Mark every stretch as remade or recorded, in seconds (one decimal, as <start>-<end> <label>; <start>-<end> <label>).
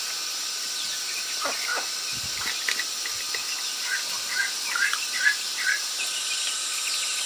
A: 0.0-7.3 recorded